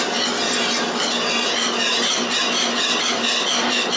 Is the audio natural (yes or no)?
yes